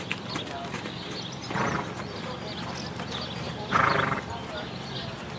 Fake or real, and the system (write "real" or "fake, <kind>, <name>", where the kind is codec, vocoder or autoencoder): real